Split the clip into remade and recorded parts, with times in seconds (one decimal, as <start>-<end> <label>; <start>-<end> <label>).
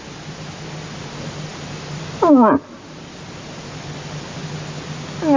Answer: 0.0-5.4 recorded